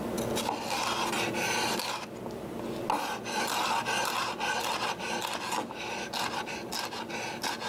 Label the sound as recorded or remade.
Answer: recorded